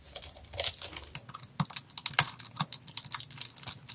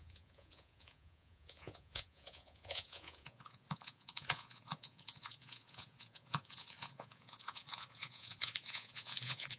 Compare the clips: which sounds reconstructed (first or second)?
second